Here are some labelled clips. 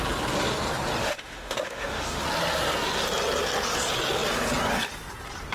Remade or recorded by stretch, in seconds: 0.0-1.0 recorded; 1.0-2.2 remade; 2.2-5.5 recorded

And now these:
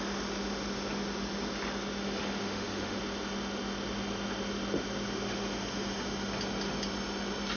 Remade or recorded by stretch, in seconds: 0.0-2.4 recorded; 2.4-3.0 remade; 3.0-7.6 recorded

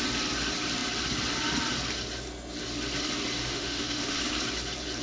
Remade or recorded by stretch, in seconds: 0.0-3.4 recorded; 3.4-4.2 remade; 4.2-5.0 recorded

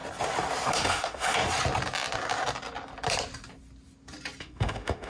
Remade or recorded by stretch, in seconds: 0.0-0.7 recorded; 0.7-1.4 remade; 1.4-4.4 recorded; 4.4-5.1 remade

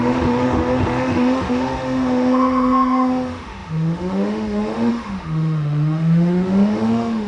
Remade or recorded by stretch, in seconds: 0.0-7.3 remade